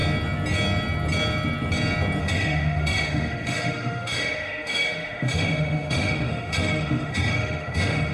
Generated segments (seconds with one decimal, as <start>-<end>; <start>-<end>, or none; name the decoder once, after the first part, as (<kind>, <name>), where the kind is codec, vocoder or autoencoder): 2.2-8.1 (autoencoder, DAC-VAE)

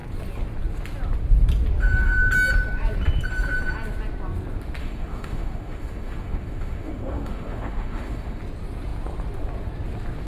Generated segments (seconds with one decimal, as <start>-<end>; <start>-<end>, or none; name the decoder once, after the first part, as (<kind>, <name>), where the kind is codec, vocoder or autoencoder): 4.8-8.4 (autoencoder, DAC-VAE)

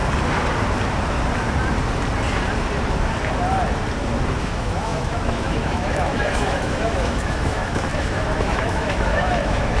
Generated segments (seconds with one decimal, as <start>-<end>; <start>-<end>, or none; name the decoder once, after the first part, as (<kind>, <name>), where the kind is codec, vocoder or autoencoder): 4.4-9.8 (autoencoder, DAC-VAE)

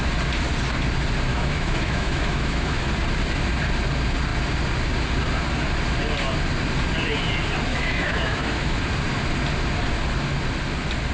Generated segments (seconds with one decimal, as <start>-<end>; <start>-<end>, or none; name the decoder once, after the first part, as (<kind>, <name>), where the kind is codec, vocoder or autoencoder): 1.3-2.9 (autoencoder, DAC-VAE); 7.7-8.8